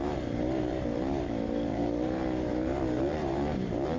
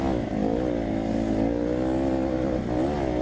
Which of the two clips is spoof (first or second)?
first